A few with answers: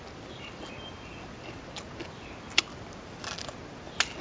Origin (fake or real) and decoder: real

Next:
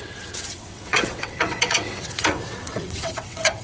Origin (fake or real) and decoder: fake, vocoder, WaveNeXt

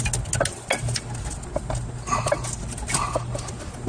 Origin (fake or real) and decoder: real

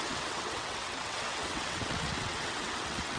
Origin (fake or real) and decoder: fake, vocoder, WaveNeXt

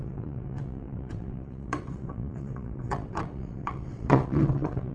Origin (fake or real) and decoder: fake, vocoder, WaveNeXt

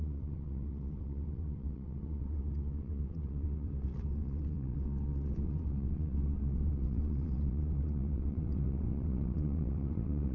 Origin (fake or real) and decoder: fake, vocoder, WaveNeXt